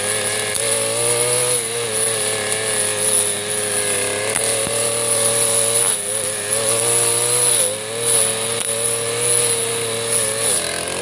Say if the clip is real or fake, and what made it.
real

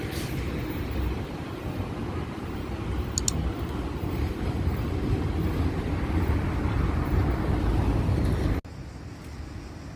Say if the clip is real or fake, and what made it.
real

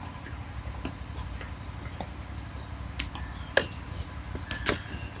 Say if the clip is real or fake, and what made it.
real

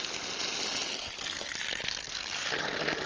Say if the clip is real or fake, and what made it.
real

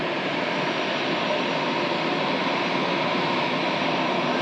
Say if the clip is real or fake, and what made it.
real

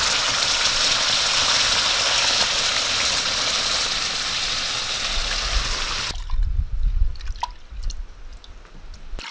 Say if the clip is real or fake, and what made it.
real